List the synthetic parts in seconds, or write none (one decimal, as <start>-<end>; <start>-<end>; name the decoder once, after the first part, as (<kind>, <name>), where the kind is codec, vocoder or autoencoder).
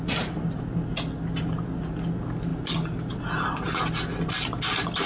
none